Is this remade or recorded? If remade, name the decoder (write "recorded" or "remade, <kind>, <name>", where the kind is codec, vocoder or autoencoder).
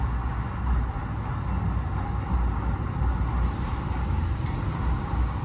recorded